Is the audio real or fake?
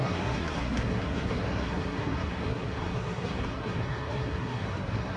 fake